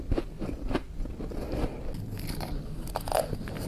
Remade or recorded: recorded